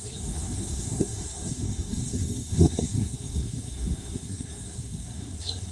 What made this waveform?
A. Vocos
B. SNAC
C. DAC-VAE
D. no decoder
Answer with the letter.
B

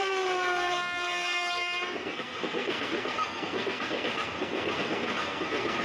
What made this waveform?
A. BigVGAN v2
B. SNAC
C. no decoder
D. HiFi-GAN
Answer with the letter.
B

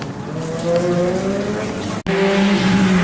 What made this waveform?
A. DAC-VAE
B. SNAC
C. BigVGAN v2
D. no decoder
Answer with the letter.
D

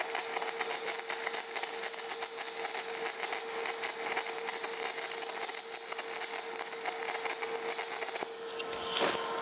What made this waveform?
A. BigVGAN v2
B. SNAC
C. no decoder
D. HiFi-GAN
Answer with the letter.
C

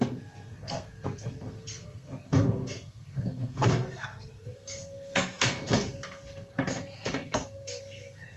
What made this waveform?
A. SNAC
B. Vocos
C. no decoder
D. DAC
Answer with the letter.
A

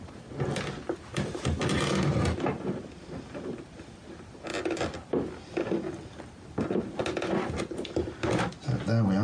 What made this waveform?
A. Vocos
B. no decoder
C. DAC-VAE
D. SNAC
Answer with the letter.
B